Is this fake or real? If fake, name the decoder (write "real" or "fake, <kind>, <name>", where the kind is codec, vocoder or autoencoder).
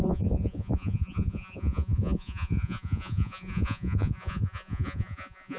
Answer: fake, vocoder, Vocos